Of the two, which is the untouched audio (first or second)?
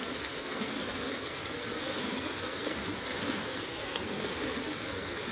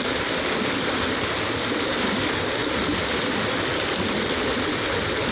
second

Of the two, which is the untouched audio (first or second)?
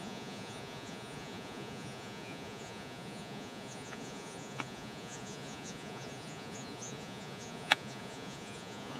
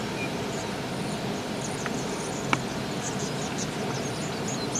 second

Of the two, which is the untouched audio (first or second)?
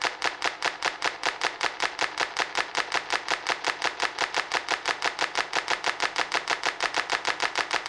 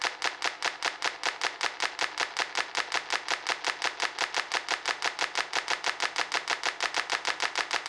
second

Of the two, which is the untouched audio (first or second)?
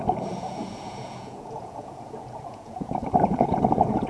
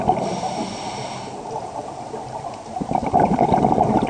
second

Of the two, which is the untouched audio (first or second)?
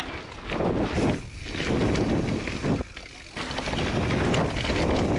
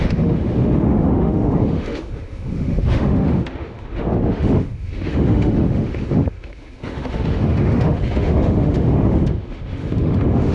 first